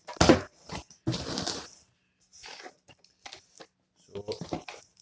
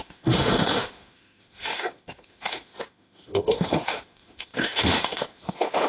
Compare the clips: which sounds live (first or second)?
first